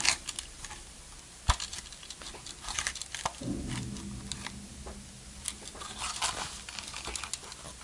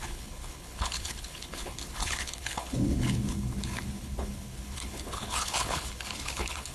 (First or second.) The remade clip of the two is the second